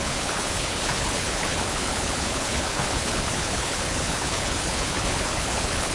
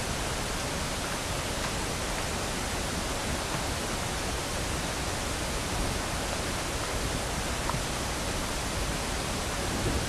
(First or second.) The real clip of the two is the second